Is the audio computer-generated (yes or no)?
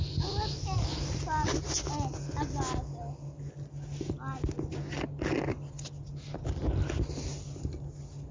no